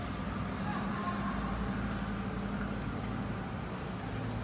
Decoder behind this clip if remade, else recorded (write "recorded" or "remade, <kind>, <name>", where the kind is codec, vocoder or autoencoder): recorded